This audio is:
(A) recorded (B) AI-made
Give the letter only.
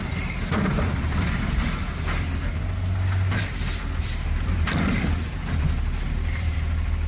B